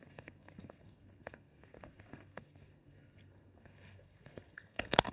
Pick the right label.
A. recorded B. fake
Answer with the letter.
B